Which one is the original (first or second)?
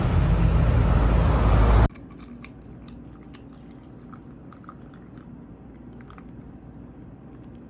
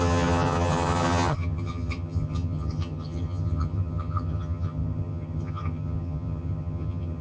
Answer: first